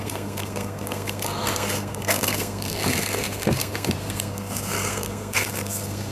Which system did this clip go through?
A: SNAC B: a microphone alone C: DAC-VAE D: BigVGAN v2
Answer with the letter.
A